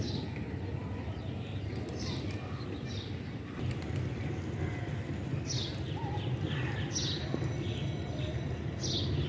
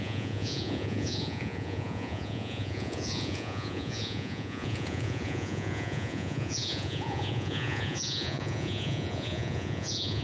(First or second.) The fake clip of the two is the second